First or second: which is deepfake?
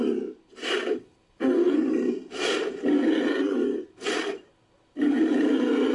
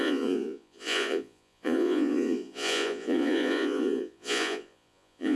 second